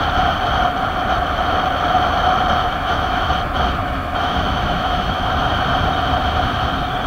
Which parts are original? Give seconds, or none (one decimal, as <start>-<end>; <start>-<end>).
0.0-2.6; 3.3-3.8; 5.5-7.1